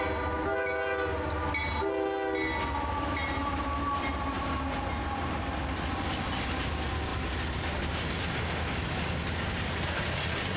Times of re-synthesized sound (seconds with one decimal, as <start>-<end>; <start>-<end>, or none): none